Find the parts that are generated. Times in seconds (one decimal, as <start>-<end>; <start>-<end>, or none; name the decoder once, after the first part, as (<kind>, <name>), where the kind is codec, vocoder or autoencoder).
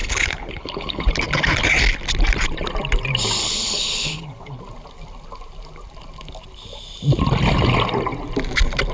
0.0-1.1 (codec, HILCodec); 3.4-4.6